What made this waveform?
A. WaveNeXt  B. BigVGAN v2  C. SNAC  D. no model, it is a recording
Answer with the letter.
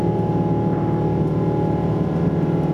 D